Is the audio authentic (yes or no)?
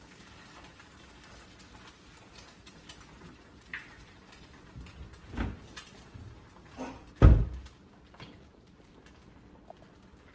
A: yes